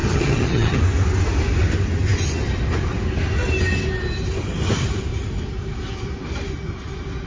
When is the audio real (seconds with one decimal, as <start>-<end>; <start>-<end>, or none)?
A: 0.8-7.3